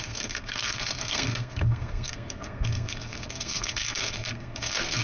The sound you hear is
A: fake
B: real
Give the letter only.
A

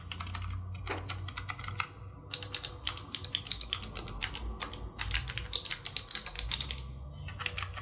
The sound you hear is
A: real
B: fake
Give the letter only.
A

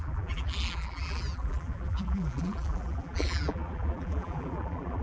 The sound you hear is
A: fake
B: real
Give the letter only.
A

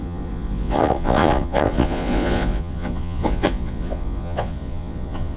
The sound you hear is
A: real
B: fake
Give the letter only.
B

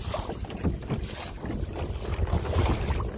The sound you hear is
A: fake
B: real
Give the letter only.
B